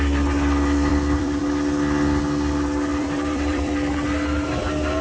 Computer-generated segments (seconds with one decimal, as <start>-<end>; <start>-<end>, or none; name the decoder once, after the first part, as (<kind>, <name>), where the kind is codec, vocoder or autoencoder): 0.9-1.4 (vocoder, BigVGAN v2); 2.9-3.7